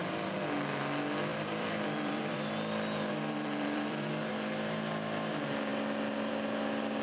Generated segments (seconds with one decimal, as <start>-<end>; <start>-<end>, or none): 1.3-4.3